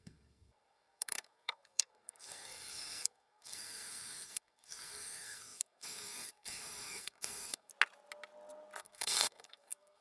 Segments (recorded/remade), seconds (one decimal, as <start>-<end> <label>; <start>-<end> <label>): 0.0-7.7 remade; 7.7-8.8 recorded; 8.8-10.0 remade